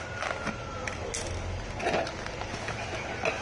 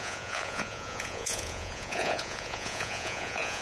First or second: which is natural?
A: first